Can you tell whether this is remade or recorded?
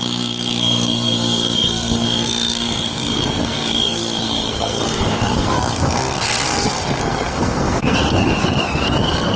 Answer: remade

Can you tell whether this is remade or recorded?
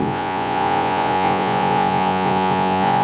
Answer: remade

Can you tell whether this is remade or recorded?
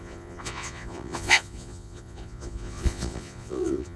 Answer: remade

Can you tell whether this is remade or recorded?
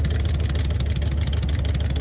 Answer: recorded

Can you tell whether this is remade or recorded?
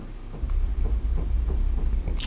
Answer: recorded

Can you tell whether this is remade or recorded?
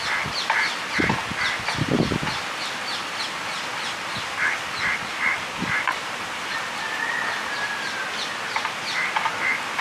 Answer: recorded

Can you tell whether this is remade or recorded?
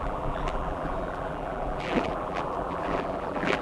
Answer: remade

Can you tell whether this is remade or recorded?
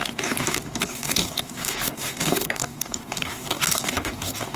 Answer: remade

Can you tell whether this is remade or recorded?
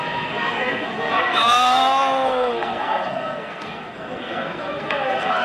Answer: remade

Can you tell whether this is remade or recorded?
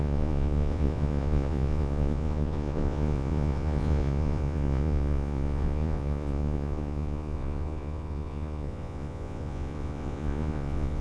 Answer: remade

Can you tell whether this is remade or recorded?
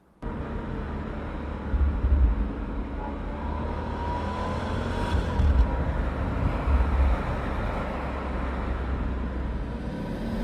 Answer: recorded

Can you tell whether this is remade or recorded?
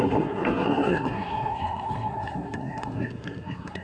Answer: remade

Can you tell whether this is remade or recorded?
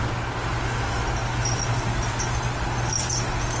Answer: recorded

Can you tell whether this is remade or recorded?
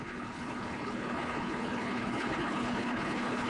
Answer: remade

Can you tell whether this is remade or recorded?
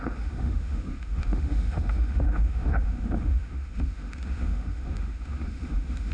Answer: remade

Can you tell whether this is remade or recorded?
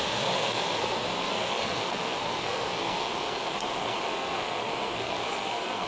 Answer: remade